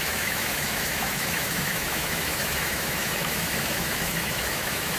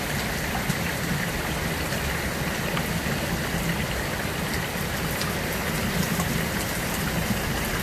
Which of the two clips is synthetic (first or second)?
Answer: first